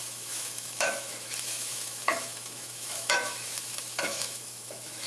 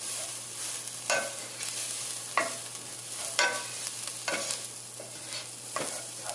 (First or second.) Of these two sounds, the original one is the second